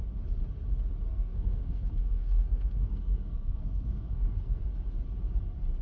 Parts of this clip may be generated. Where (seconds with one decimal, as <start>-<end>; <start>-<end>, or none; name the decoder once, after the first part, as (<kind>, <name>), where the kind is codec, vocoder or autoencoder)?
1.1-4.6 (codec, SNAC)